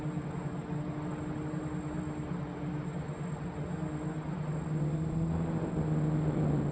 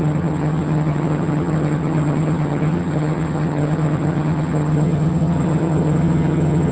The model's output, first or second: second